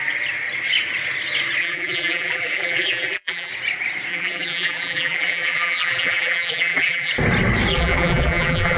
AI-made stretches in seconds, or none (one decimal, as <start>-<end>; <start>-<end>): 1.6-3.5; 4.1-7.1; 7.7-8.8